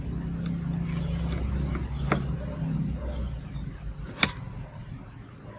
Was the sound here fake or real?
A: real